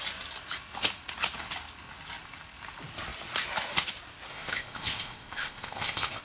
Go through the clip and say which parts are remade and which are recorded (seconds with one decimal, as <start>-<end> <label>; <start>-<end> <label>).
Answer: 0.0-4.3 recorded; 4.3-6.2 remade